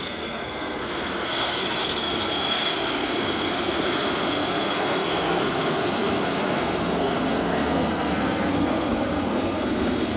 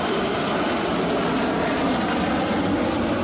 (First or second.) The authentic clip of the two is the second